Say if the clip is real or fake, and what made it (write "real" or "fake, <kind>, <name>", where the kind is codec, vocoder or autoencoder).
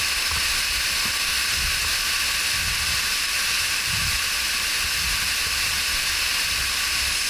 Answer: real